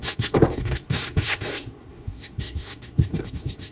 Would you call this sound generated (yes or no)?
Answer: yes